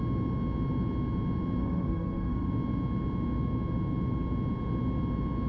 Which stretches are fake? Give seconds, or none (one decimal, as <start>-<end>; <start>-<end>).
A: 1.6-2.5